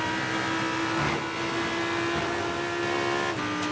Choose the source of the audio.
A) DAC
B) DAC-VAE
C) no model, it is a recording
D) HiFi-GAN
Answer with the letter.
C